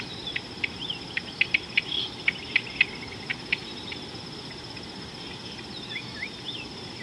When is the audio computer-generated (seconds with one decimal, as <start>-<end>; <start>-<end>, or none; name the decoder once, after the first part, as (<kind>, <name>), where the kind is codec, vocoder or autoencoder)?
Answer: none